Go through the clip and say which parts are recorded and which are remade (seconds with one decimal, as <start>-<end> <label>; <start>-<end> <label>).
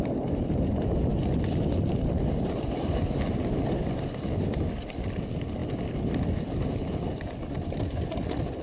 0.0-8.6 remade